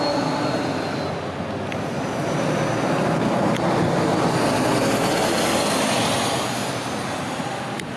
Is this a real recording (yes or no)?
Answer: yes